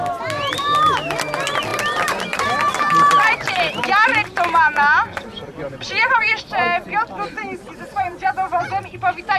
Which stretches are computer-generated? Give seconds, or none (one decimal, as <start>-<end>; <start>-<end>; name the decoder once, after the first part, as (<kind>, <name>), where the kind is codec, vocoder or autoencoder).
1.7-3.8 (vocoder, BigVGAN v2); 5.5-6.3; 7.4-8.6